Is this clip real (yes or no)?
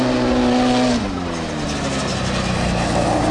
yes